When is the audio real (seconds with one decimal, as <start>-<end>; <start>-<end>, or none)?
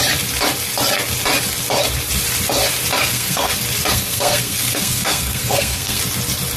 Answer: 0.0-3.0; 3.5-3.9; 6.0-6.6